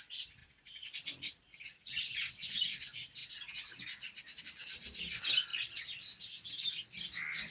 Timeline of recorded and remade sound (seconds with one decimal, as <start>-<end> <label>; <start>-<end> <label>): 0.0-7.5 recorded